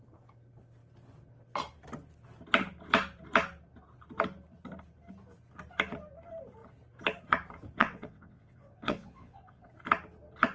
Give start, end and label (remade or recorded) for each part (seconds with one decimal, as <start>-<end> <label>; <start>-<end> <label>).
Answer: 0.0-7.8 recorded; 7.8-9.7 remade; 9.7-10.5 recorded